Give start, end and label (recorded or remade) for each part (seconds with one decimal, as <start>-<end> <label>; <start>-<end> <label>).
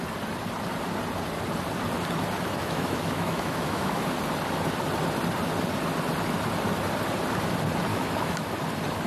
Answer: 0.0-2.6 recorded; 2.6-4.1 remade; 4.1-7.9 recorded; 7.9-8.5 remade; 8.5-9.1 recorded